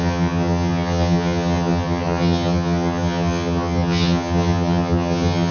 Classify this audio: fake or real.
fake